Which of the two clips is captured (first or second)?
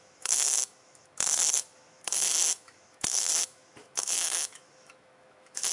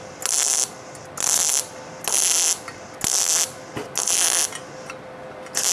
second